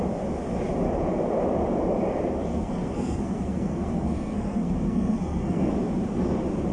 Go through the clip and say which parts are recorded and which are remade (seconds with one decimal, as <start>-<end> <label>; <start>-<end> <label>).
0.0-2.5 recorded; 2.5-5.7 remade; 5.7-6.7 recorded